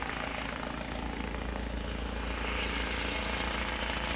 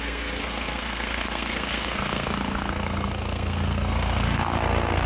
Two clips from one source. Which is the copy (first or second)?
second